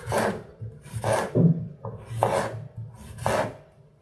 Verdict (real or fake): real